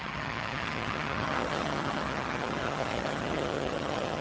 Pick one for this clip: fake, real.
fake